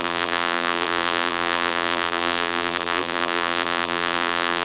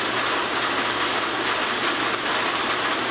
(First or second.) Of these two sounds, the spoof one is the first